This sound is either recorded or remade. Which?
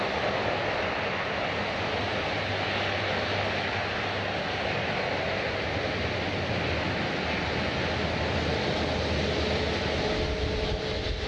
recorded